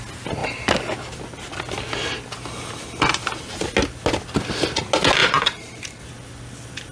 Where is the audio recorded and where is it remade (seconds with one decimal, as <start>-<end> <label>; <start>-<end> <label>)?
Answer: 0.0-5.2 recorded; 5.2-6.0 remade; 6.0-6.9 recorded